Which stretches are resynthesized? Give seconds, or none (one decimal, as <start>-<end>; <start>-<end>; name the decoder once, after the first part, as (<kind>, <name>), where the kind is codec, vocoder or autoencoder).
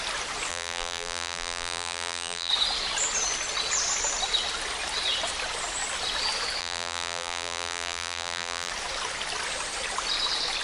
0.5-2.5 (vocoder, BigVGAN v2); 6.6-8.7